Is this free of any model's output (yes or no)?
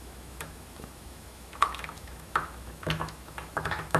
no